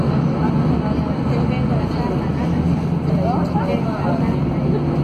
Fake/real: real